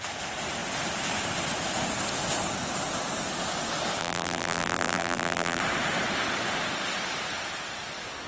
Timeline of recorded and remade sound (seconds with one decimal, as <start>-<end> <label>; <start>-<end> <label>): 0.0-4.0 recorded; 4.0-5.6 remade; 5.6-8.3 recorded